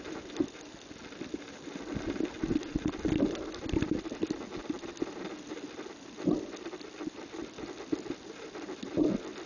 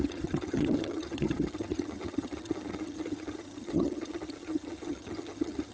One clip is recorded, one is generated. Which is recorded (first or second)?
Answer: first